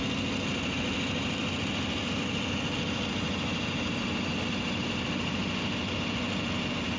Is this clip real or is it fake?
real